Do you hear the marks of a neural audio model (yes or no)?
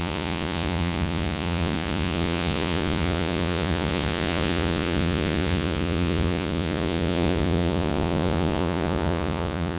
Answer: yes